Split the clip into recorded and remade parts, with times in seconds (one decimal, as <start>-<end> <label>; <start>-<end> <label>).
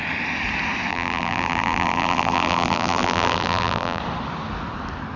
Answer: 0.0-0.9 recorded; 0.9-4.0 remade; 4.0-5.2 recorded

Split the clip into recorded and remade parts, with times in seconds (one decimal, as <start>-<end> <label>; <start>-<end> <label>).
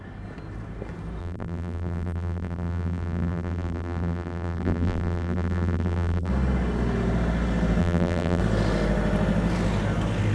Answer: 0.0-1.2 recorded; 1.2-6.3 remade; 6.3-7.8 recorded; 7.8-8.4 remade; 8.4-10.3 recorded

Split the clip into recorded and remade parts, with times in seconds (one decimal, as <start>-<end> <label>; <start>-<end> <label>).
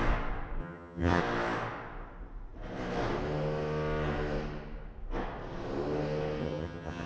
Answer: 0.0-0.6 recorded; 0.6-1.2 remade; 1.2-6.4 recorded; 6.4-7.1 remade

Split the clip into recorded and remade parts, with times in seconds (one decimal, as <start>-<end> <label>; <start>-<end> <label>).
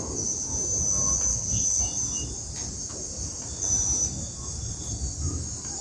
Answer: 0.0-1.3 recorded; 1.3-1.8 remade; 1.8-5.8 recorded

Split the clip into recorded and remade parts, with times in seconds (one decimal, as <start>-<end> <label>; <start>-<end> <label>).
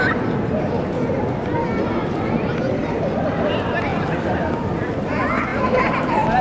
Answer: 0.0-6.4 recorded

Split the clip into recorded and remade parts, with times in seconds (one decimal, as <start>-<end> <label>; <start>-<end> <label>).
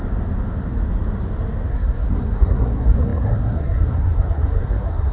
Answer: 0.0-1.7 recorded; 1.7-5.1 remade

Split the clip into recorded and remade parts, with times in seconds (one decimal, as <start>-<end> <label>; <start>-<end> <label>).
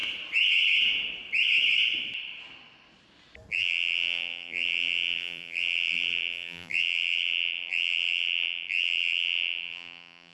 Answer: 0.0-3.5 recorded; 3.5-10.3 remade